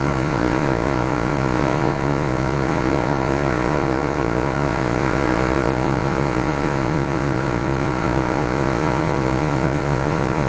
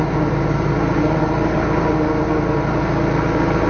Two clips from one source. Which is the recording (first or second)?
second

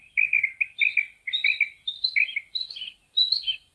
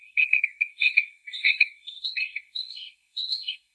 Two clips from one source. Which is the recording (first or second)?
first